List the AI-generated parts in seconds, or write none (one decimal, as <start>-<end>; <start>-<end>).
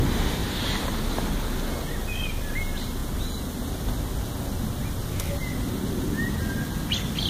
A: 0.4-1.0